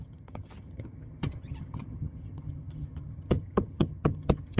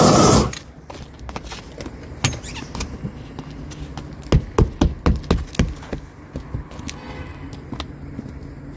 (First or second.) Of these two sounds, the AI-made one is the first